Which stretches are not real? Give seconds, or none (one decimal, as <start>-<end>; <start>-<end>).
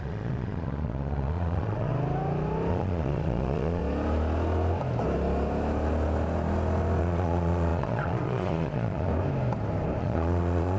0.0-1.9; 2.7-3.8; 7.0-9.1; 10.0-10.8